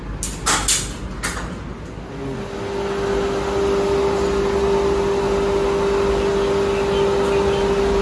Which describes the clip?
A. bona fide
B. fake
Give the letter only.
A